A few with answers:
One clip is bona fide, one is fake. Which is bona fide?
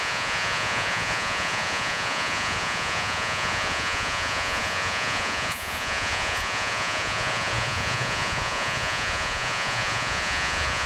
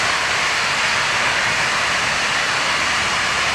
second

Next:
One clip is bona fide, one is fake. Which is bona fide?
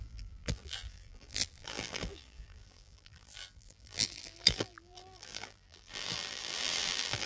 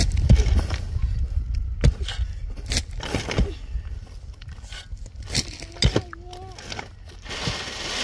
second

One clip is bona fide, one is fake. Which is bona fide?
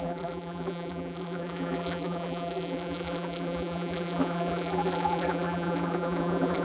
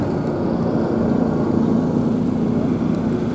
second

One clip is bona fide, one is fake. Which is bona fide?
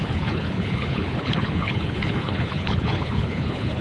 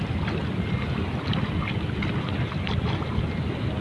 second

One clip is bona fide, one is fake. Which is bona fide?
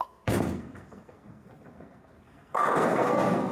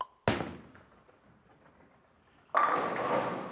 second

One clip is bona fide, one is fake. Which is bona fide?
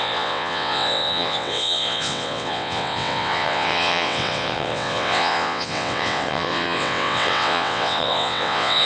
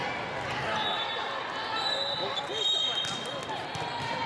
second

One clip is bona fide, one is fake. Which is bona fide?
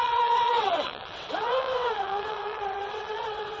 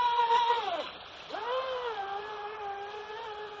second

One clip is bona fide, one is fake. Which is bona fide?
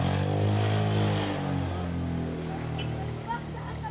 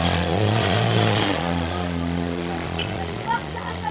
first